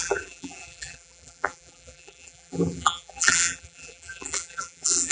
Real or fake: fake